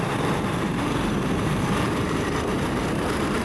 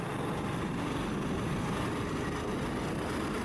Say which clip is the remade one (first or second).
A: first